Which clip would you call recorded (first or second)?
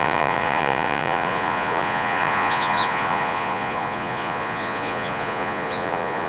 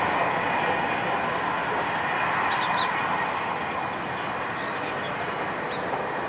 second